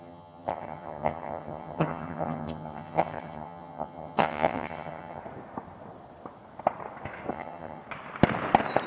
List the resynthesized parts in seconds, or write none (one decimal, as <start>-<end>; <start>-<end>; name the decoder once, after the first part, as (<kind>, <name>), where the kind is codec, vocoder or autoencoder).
0.0-5.2 (vocoder, HiFi-GAN); 7.3-7.8